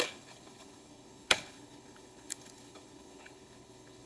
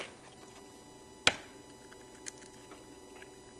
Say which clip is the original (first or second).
second